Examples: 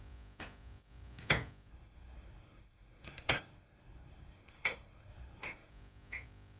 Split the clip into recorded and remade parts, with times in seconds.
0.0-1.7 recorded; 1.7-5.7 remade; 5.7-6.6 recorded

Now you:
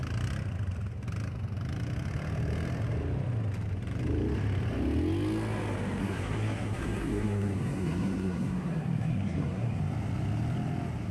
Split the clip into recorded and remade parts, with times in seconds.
0.0-6.0 recorded; 6.0-9.8 remade; 9.8-11.1 recorded